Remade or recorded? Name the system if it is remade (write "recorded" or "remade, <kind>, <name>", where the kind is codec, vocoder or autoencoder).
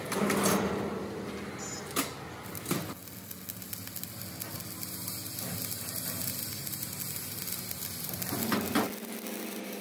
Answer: recorded